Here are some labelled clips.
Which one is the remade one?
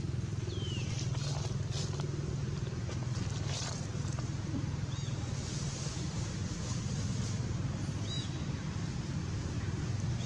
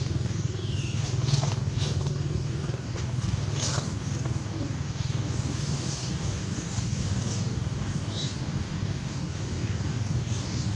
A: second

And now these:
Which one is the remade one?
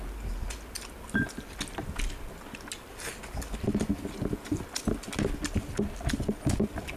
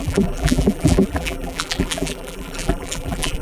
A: second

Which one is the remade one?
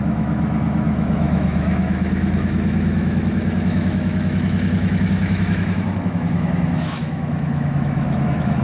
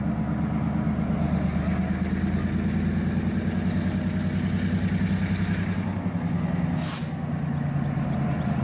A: first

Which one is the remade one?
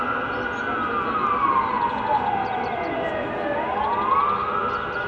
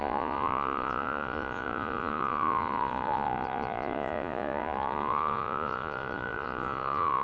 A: second